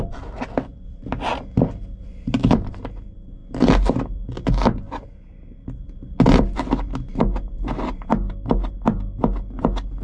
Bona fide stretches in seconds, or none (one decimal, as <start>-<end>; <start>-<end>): 0.0-10.0